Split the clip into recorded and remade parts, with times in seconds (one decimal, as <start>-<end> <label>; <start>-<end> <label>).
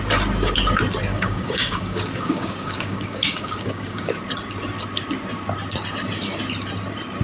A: 0.0-1.1 recorded; 1.1-4.2 remade; 4.2-7.2 recorded